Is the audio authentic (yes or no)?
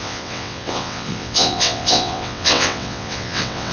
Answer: no